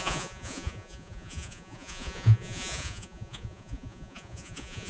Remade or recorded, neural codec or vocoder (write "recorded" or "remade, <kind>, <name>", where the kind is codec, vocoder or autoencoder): remade, vocoder, Vocos